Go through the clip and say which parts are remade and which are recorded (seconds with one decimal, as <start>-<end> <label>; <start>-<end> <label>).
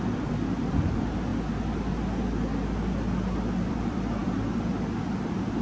0.0-1.3 remade; 1.3-3.7 recorded; 3.7-5.6 remade